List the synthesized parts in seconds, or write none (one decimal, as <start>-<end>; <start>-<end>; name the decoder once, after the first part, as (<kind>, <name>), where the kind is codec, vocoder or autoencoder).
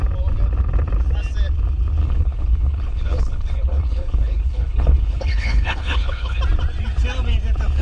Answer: 2.0-6.4 (codec, HILCodec)